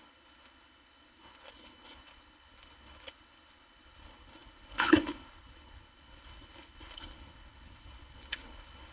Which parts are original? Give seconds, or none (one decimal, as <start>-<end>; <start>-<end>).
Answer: none